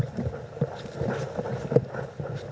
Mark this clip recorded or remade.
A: recorded